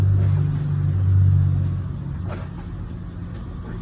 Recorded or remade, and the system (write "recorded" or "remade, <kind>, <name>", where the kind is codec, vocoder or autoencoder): recorded